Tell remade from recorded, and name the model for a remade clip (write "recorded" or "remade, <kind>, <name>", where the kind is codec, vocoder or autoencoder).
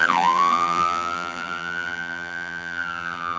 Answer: remade, vocoder, BigVGAN v2